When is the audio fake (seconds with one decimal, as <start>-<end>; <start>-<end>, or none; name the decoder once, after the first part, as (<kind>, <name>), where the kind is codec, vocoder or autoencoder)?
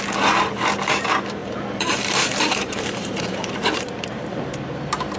1.4-4.5 (vocoder, BigVGAN v2)